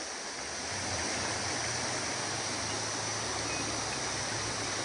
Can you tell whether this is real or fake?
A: real